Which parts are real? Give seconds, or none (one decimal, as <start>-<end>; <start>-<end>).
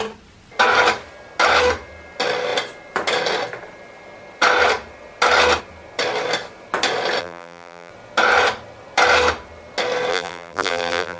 0.0-7.2; 7.9-10.1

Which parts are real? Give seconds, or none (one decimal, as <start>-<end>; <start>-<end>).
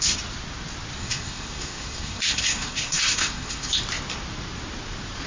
0.0-1.0; 3.7-5.3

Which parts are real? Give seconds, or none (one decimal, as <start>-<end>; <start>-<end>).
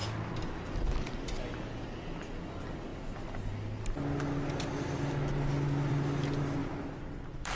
0.0-6.6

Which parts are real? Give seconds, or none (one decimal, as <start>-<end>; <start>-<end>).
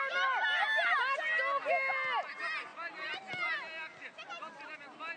0.0-5.2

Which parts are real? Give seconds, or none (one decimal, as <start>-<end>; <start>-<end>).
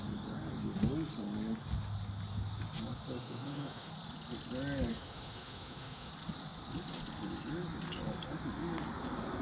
0.0-3.2; 3.9-4.9; 6.1-9.4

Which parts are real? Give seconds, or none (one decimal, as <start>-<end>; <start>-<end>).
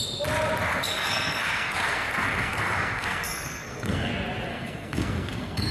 0.0-0.7; 4.1-4.5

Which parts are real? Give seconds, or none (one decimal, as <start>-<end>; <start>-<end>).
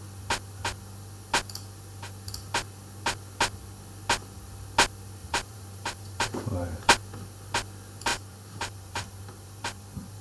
0.0-5.2; 7.0-8.1